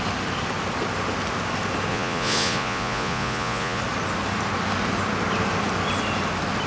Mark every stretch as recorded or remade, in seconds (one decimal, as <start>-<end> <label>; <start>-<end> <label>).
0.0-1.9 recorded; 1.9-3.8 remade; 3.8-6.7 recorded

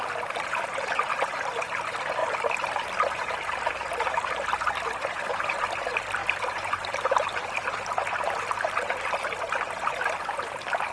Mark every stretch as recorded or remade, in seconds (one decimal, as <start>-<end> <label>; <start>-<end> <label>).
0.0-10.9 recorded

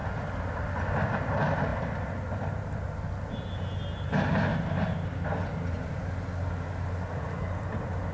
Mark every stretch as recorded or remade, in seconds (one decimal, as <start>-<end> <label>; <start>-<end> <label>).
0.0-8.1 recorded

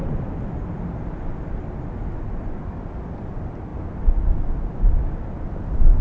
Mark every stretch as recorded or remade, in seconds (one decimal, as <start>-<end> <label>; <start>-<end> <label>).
0.0-6.0 recorded

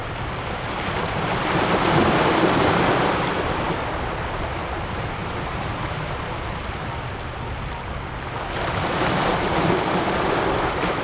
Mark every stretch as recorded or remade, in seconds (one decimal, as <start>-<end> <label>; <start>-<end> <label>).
0.0-11.0 recorded

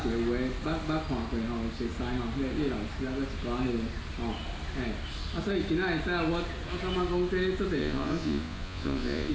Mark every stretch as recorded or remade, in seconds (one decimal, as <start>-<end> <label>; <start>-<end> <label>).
0.0-7.8 recorded; 7.8-9.3 remade